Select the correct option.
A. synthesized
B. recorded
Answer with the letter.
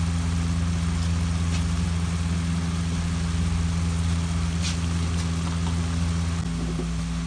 B